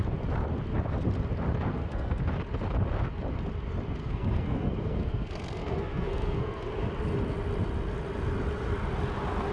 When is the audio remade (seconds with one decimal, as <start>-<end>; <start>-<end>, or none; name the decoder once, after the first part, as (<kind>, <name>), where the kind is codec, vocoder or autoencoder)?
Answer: 1.7-2.2 (codec, SNAC); 4.0-6.7